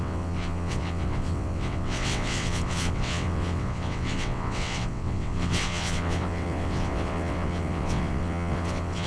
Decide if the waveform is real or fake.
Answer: fake